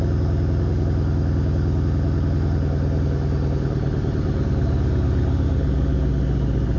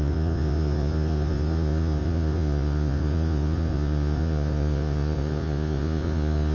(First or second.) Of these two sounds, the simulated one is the second